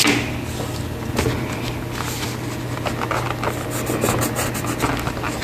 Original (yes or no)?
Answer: yes